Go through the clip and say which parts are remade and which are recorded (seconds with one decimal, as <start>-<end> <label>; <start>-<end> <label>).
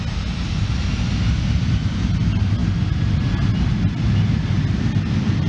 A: 0.0-5.5 recorded